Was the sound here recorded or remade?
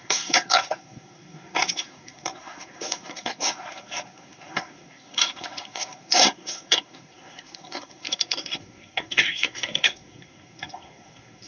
remade